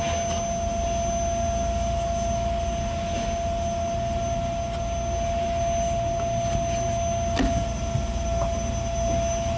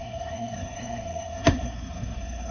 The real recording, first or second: first